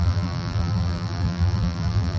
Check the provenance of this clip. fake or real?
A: fake